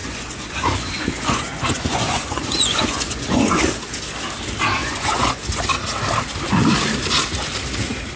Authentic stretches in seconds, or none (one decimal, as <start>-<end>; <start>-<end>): 3.6-4.8; 5.4-8.2